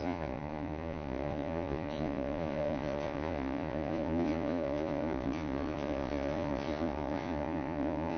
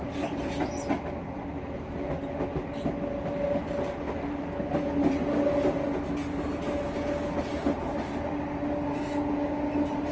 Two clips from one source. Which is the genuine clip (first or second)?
second